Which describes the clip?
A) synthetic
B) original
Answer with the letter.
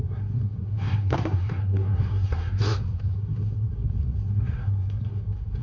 A